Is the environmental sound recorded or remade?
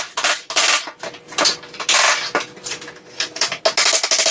recorded